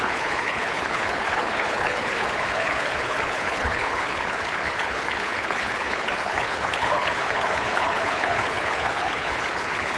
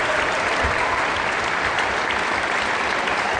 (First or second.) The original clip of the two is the second